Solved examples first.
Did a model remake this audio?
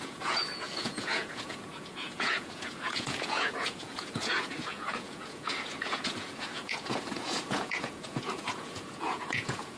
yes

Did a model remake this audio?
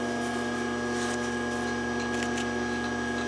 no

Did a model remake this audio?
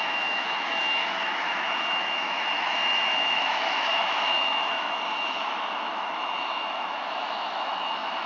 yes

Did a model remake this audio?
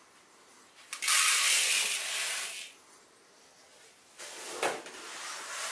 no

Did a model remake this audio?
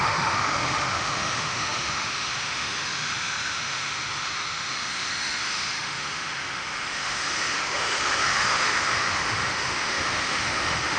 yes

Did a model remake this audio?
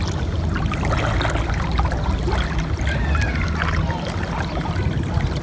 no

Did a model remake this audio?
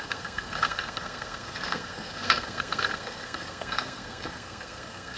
yes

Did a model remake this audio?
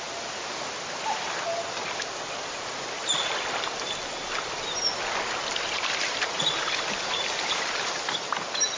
no